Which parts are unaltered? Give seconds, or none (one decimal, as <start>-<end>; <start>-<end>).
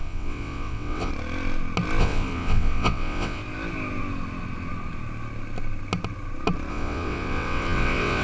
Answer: 1.1-2.0; 3.4-6.7